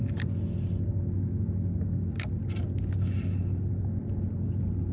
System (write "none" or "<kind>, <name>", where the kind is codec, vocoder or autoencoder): none